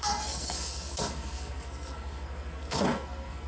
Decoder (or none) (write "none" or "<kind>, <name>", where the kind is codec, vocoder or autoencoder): codec, SNAC